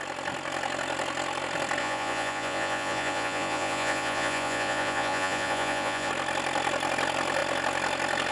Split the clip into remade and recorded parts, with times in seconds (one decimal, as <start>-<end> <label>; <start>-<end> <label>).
0.0-1.8 recorded; 1.8-6.1 remade; 6.1-8.3 recorded